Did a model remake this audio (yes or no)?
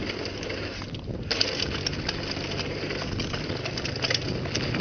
no